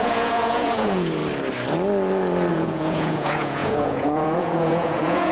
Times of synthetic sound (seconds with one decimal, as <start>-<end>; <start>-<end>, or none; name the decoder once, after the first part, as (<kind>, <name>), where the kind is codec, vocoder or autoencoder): 0.0-1.2 (vocoder, Vocos); 2.5-5.3